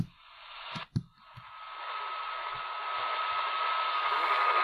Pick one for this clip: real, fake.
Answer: real